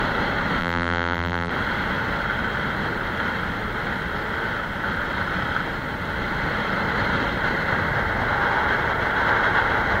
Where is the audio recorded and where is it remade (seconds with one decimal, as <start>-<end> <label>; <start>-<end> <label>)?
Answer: 0.0-0.6 recorded; 0.6-1.5 remade; 1.5-10.0 recorded